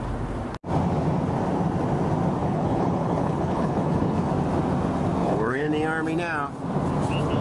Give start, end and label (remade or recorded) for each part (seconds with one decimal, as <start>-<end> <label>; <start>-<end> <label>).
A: 0.0-2.4 recorded; 2.4-4.3 remade; 4.3-5.2 recorded; 5.2-5.7 remade; 5.7-7.4 recorded